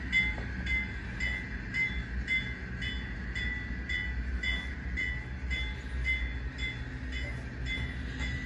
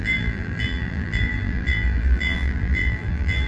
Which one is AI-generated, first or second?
second